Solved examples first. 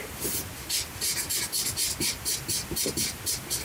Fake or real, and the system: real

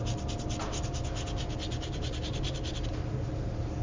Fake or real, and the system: real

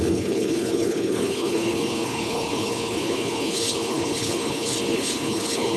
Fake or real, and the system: fake, codec, HILCodec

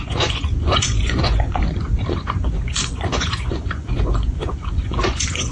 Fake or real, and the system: fake, vocoder, Vocos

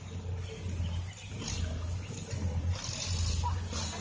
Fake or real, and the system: real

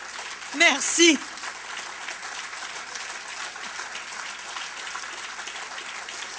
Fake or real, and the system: real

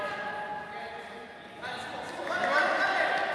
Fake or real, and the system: real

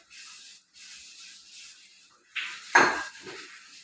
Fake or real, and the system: real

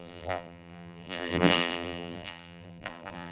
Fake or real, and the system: fake, vocoder, BigVGAN v2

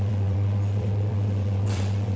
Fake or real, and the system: fake, vocoder, WaveNeXt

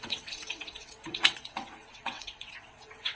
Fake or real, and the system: fake, vocoder, WaveNeXt